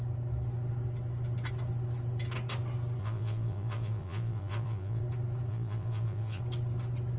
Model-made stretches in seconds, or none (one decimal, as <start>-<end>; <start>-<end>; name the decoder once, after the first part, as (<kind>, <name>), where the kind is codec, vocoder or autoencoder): 3.0-5.0 (vocoder, Vocos); 5.5-6.4